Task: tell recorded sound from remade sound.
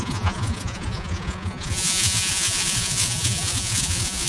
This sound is remade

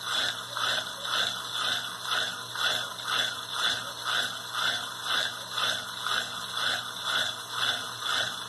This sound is recorded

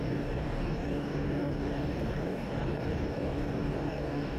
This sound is remade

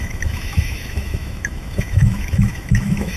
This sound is remade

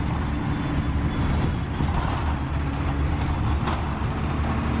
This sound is recorded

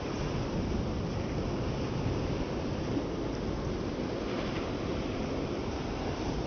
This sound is recorded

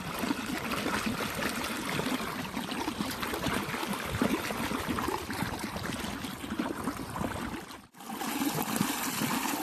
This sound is recorded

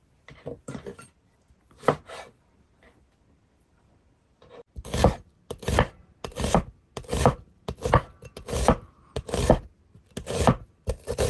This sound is recorded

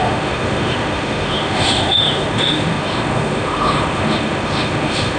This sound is remade